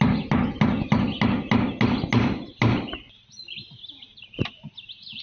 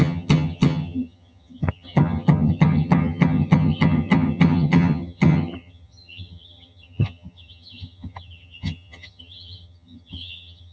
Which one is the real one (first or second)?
first